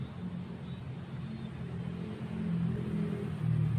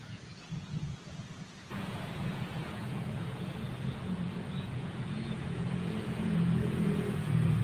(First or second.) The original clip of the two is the first